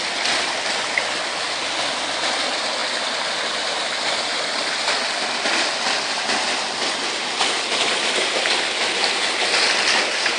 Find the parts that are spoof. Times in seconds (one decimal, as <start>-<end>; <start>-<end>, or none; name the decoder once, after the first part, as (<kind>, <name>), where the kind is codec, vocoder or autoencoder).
none